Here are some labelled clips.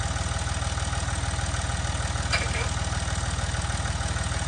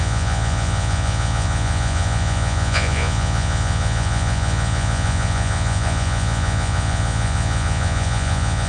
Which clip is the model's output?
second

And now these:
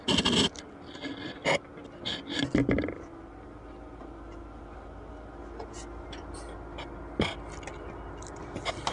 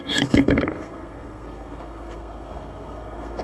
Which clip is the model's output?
second